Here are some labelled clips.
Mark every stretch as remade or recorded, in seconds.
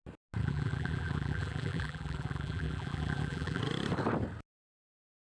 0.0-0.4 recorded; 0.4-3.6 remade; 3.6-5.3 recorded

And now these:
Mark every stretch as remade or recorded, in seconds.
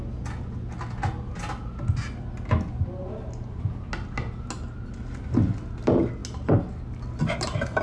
0.0-7.8 recorded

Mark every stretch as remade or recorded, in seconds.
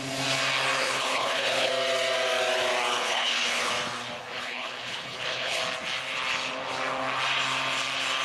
0.0-0.8 recorded; 0.8-1.7 remade; 1.7-3.0 recorded; 3.0-3.7 remade; 3.7-4.2 recorded; 4.2-5.6 remade; 5.6-8.2 recorded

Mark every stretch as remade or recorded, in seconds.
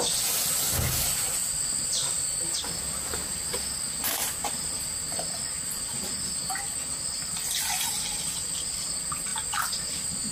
0.0-10.3 recorded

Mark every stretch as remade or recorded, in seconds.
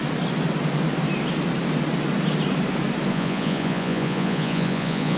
0.0-3.1 recorded; 3.1-5.2 remade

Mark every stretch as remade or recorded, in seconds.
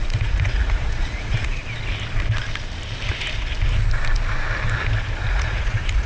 0.0-1.6 remade; 1.6-5.3 recorded; 5.3-6.1 remade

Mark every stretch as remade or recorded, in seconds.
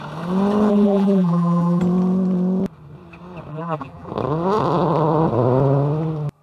0.0-0.7 recorded; 0.7-1.8 remade; 1.8-3.5 recorded; 3.5-4.1 remade; 4.1-6.4 recorded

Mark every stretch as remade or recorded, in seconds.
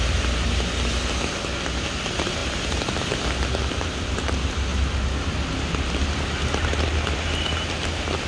0.0-8.3 recorded